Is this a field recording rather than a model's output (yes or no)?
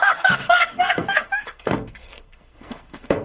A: no